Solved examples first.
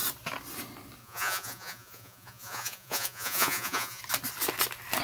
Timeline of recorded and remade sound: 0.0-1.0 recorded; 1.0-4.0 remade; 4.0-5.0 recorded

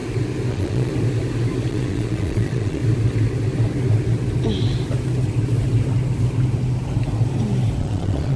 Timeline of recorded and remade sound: 0.0-0.5 recorded; 0.5-0.9 remade; 0.9-1.7 recorded; 1.7-2.8 remade; 2.8-7.8 recorded; 7.8-8.4 remade

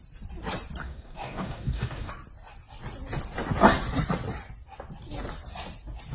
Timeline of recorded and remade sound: 0.0-0.8 recorded; 0.8-2.1 remade; 2.1-6.1 recorded

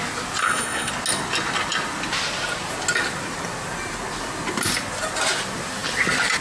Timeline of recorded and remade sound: 0.0-0.4 recorded; 0.4-0.9 remade; 0.9-6.4 recorded

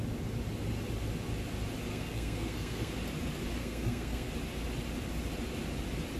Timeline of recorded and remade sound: 0.0-1.9 recorded; 1.9-2.9 remade; 2.9-3.6 recorded; 3.6-4.3 remade; 4.3-6.2 recorded